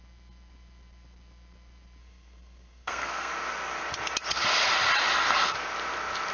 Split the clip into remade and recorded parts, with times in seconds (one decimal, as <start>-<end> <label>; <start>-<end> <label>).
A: 0.0-2.0 recorded; 2.0-3.3 remade; 3.3-6.3 recorded